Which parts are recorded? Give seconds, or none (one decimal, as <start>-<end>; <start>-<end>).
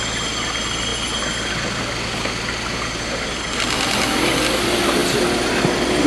0.0-6.1